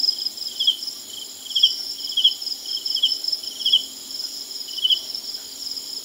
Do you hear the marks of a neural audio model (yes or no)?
yes